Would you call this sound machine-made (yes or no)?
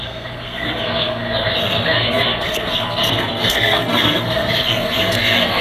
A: yes